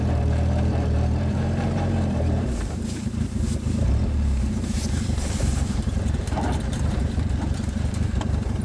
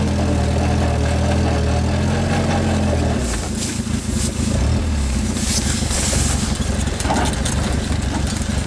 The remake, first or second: first